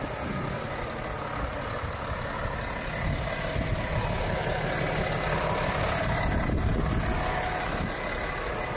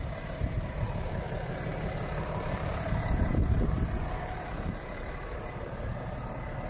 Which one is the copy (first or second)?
second